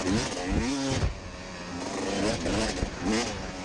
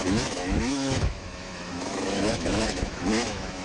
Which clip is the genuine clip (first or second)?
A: first